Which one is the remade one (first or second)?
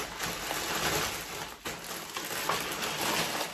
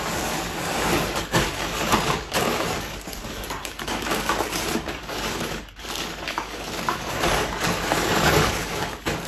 second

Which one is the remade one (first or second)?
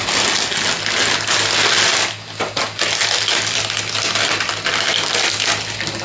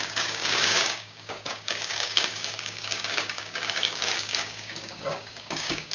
second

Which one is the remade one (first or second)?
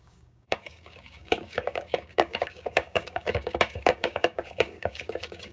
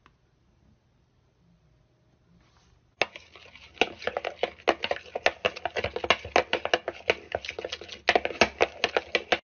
first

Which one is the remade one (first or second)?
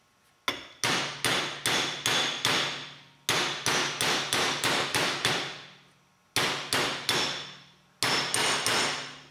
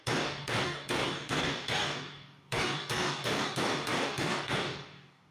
second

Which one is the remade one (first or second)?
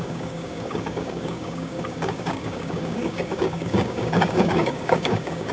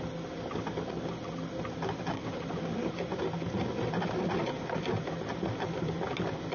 first